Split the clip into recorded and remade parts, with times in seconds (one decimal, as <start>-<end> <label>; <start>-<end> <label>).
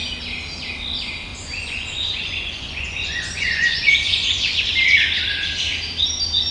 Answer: 0.0-1.3 recorded; 1.3-4.7 remade; 4.7-6.5 recorded